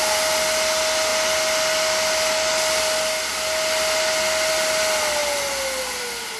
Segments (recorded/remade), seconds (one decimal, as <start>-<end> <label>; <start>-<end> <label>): 0.0-6.4 recorded